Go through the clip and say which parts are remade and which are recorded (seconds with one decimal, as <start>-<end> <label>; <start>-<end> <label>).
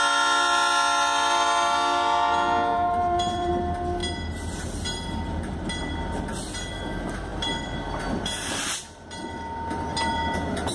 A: 0.0-2.7 recorded; 2.7-3.5 remade; 3.5-7.3 recorded; 7.3-8.0 remade; 8.0-10.7 recorded